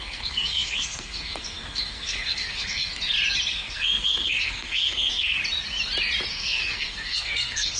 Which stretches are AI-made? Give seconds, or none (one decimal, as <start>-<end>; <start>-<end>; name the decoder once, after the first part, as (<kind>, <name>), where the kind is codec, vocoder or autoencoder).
0.0-2.9 (codec, SNAC); 3.5-5.4; 6.3-7.8